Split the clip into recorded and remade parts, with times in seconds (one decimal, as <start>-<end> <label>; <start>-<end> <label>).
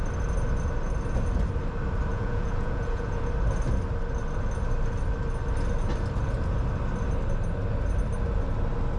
0.0-2.1 recorded; 2.1-3.3 remade; 3.3-9.0 recorded